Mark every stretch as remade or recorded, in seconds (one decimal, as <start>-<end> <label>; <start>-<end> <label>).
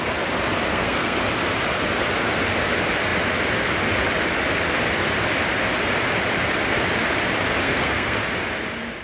0.0-0.7 recorded; 0.7-1.2 remade; 1.2-7.6 recorded; 7.6-8.2 remade; 8.2-9.0 recorded